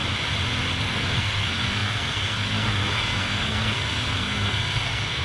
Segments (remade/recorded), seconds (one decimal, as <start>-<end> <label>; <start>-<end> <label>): 0.0-0.8 recorded; 0.8-5.2 remade